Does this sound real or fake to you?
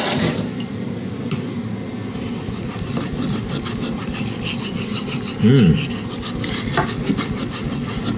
real